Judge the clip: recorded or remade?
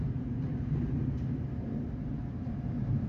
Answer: remade